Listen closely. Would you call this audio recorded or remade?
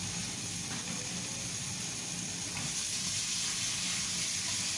recorded